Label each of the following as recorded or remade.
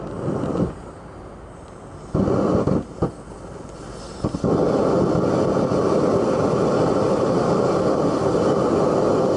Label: recorded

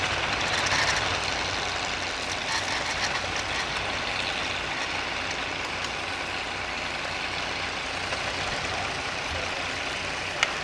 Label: recorded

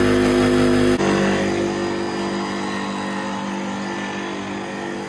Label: recorded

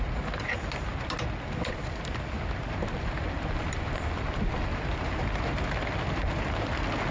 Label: recorded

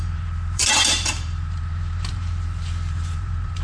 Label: remade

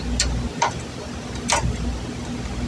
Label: recorded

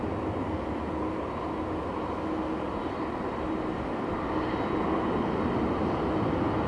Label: recorded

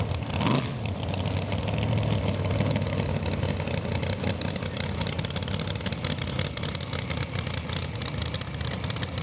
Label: recorded